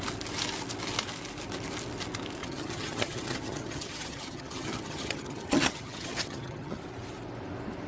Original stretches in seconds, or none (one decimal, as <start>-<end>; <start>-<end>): 0.0-2.4; 6.8-7.9